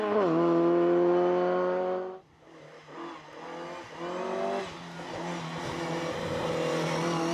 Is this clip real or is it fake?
real